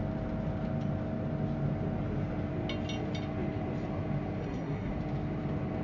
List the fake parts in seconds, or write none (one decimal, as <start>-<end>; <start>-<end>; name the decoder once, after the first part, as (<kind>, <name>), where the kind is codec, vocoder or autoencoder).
4.4-4.9 (codec, SNAC)

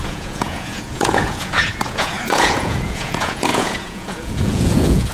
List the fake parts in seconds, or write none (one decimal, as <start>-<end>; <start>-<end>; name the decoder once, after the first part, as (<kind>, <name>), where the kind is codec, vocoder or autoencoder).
0.0-5.1 (vocoder, Vocos)

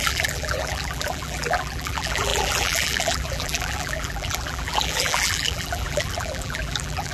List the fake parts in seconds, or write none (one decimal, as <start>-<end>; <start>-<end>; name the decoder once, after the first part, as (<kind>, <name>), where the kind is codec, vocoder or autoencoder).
0.0-7.1 (vocoder, BigVGAN v2)

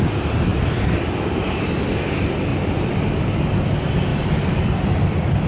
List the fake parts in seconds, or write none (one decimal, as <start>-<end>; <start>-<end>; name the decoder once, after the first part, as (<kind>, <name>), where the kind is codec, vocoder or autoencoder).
0.5-1.4 (vocoder, BigVGAN v2); 2.5-3.2; 4.1-5.5

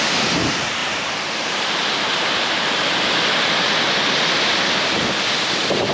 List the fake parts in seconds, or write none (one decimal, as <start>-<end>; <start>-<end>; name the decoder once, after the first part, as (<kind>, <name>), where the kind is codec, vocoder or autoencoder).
0.8-3.1 (vocoder, BigVGAN v2)